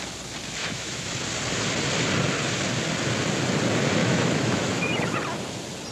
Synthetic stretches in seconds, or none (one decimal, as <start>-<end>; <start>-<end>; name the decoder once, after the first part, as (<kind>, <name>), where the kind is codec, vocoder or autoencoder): 0.6-1.1 (autoencoder, DAC-VAE); 4.0-4.8